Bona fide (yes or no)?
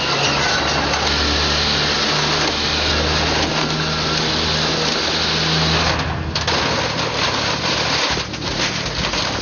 yes